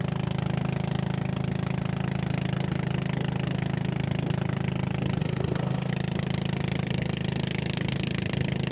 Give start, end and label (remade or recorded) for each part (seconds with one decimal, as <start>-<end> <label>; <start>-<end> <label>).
0.0-5.2 recorded; 5.2-5.9 remade; 5.9-8.7 recorded